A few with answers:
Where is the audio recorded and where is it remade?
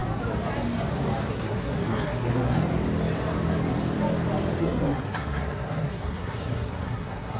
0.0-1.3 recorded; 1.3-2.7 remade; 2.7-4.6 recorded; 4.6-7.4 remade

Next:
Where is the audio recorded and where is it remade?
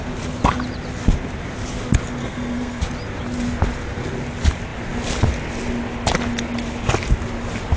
0.0-2.2 recorded; 2.2-2.8 remade; 2.8-7.8 recorded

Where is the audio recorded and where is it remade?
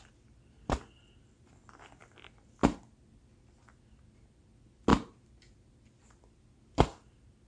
0.0-7.5 recorded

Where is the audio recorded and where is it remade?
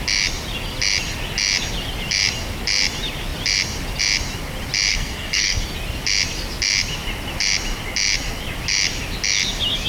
0.0-4.9 recorded; 4.9-5.6 remade; 5.6-9.9 recorded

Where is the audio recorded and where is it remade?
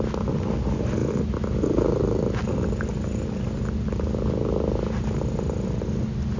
0.0-6.4 recorded